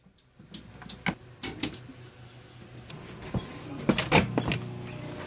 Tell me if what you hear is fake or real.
real